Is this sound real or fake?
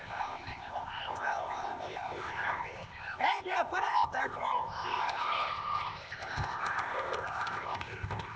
fake